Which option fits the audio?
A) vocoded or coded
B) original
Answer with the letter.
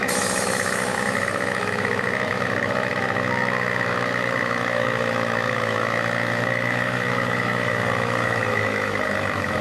A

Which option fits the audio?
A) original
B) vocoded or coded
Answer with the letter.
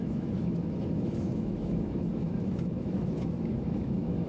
B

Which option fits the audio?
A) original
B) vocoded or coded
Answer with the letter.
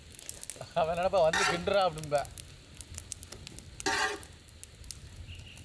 A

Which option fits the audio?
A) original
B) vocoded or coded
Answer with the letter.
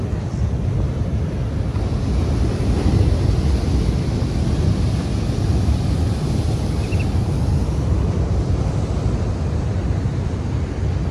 A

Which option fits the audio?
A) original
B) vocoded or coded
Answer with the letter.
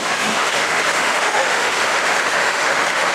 B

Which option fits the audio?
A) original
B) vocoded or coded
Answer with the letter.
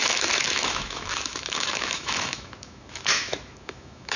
B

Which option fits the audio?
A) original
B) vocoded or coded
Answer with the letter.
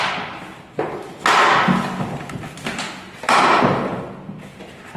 A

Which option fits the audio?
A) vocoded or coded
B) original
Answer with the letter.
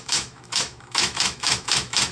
A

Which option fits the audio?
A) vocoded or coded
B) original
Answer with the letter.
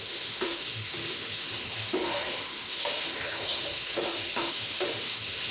A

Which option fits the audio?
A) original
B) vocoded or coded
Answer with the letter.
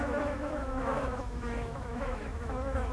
B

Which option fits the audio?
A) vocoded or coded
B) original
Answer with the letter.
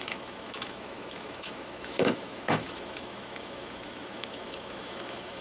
A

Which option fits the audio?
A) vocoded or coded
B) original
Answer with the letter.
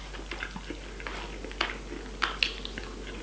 B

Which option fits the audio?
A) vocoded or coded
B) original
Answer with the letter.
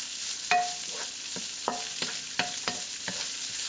B